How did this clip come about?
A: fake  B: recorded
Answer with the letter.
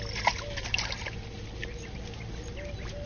B